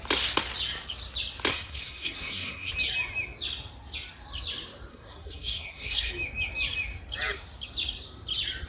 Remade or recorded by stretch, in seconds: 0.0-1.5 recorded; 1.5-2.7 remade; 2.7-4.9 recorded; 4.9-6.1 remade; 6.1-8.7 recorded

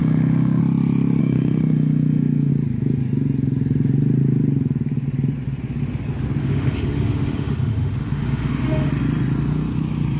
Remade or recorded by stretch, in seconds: 0.0-0.6 remade; 0.6-1.2 recorded; 1.2-2.5 remade; 2.5-6.4 recorded; 6.4-8.9 remade; 8.9-10.2 recorded

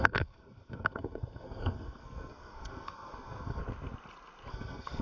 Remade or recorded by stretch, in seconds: 0.0-3.6 remade; 3.6-4.5 recorded; 4.5-5.0 remade

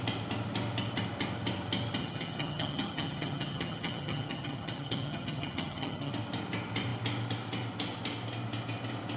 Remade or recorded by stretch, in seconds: 0.0-2.0 recorded; 2.0-6.1 remade; 6.1-9.2 recorded